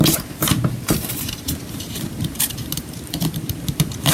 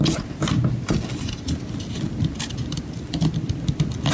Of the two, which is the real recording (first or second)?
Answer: second